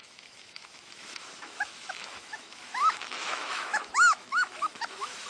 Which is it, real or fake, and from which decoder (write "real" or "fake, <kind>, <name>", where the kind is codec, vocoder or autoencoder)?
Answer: fake, autoencoder, DAC-VAE